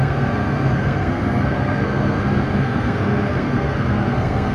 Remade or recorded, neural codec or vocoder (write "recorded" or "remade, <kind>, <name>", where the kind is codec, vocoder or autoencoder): remade, codec, SNAC